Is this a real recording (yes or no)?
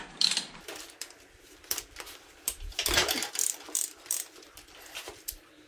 no